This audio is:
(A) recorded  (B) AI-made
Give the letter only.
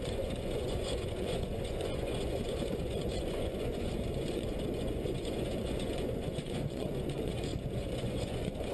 B